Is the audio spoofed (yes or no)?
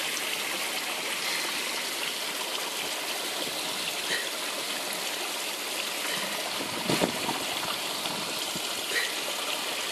no